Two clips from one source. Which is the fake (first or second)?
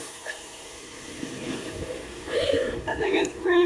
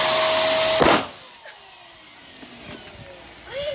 first